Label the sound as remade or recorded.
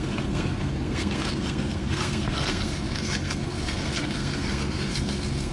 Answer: remade